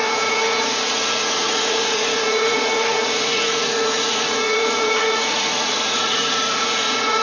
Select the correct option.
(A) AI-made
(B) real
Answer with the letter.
A